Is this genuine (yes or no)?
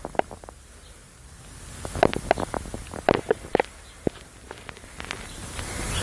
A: yes